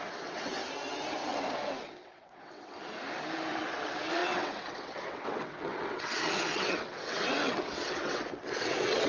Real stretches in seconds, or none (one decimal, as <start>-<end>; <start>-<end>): 0.6-1.9; 2.8-3.5